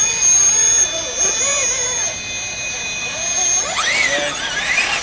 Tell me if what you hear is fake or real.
real